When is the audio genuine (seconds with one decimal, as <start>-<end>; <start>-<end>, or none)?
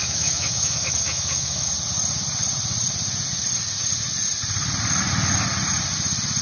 1.7-6.4